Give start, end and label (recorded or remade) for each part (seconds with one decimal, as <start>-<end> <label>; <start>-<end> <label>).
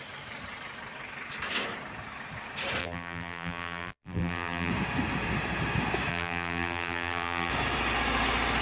0.0-2.8 recorded; 2.8-4.7 remade; 4.7-6.1 recorded; 6.1-7.5 remade; 7.5-8.6 recorded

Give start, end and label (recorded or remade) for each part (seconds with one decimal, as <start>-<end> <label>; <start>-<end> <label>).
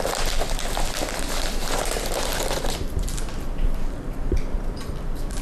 0.0-1.6 recorded; 1.6-4.8 remade; 4.8-5.4 recorded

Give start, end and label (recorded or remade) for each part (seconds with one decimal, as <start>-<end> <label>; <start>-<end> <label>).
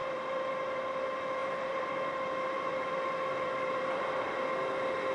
0.0-0.9 remade; 0.9-1.4 recorded; 1.4-4.2 remade; 4.2-5.1 recorded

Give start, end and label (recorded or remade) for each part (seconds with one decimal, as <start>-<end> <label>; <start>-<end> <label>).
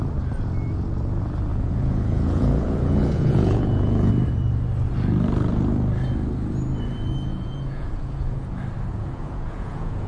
0.0-1.5 recorded; 1.5-4.1 remade; 4.1-7.3 recorded; 7.3-8.5 remade; 8.5-8.9 recorded; 8.9-10.1 remade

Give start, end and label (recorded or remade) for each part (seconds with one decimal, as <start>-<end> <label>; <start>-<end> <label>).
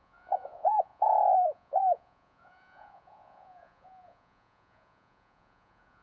0.0-6.0 remade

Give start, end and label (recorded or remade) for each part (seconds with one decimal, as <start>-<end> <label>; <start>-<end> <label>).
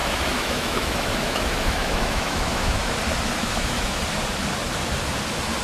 0.0-2.9 remade; 2.9-3.4 recorded; 3.4-4.0 remade; 4.0-5.6 recorded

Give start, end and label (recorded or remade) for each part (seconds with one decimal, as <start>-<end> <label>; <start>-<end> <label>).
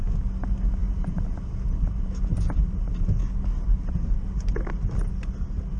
0.0-5.8 recorded